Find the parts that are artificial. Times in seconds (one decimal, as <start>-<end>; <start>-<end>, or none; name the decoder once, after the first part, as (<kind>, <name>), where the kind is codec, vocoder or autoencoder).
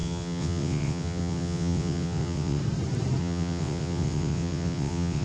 0.0-2.6 (vocoder, WaveNeXt); 3.2-5.2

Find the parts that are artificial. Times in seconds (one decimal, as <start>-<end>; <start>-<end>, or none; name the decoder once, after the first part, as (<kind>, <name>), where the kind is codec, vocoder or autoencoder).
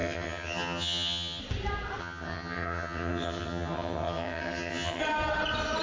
0.0-1.4 (vocoder, HiFi-GAN); 2.0-5.0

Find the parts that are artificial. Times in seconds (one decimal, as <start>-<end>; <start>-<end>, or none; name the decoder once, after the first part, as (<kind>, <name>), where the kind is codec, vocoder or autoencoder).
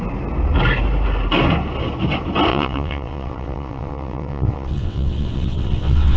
2.5-6.2 (vocoder, WaveNeXt)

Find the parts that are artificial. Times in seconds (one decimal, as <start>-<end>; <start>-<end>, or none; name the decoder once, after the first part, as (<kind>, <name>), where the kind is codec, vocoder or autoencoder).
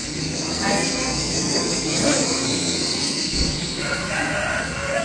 0.0-4.0 (codec, SNAC); 4.6-5.0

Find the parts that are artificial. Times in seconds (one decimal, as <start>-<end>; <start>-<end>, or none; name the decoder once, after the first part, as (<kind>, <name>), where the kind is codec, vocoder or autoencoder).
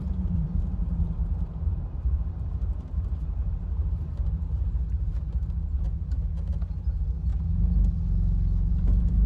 0.0-7.3 (vocoder, BigVGAN v2); 8.7-9.3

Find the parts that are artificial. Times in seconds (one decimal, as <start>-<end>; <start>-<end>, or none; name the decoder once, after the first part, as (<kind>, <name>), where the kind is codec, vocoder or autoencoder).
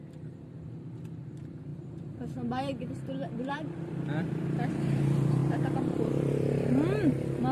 0.0-7.5 (vocoder, BigVGAN v2)